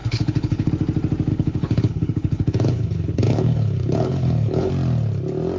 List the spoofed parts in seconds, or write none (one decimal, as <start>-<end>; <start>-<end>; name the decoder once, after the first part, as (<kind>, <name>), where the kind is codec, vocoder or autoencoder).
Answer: 0.0-0.7 (codec, HILCodec); 1.3-4.7

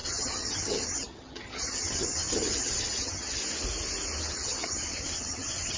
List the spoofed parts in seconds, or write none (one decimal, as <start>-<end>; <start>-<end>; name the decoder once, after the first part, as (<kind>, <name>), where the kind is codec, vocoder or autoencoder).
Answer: 0.0-3.4 (vocoder, HiFi-GAN); 4.3-5.8

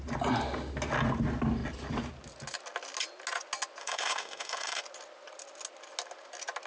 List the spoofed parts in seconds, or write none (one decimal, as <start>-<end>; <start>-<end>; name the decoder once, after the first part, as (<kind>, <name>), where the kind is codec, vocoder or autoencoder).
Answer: 3.8-4.8 (autoencoder, DAC-VAE)

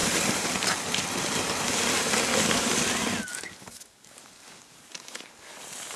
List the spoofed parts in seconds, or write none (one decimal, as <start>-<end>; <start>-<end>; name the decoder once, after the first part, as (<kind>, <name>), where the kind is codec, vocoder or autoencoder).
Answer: 2.3-2.8 (codec, DAC); 3.3-5.5

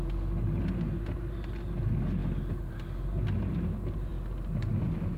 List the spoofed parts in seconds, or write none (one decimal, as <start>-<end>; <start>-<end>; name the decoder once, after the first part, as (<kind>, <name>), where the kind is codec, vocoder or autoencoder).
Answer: none

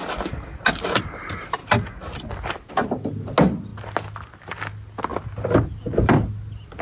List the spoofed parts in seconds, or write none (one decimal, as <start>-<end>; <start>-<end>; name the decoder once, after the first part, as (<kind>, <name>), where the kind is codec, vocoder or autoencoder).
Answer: none

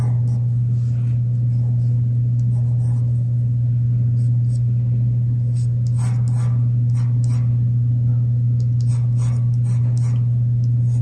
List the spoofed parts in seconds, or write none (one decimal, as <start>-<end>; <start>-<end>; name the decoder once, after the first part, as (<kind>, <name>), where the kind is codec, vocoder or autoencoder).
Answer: none

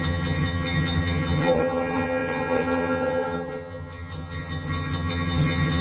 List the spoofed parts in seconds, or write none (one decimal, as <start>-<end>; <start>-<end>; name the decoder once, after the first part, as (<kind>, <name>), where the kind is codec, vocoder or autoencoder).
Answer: 0.0-5.8 (vocoder, HiFi-GAN)